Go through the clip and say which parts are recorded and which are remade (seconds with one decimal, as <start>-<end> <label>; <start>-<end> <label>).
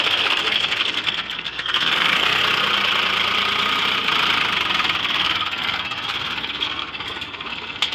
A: 0.0-2.4 remade; 2.4-5.0 recorded; 5.0-7.9 remade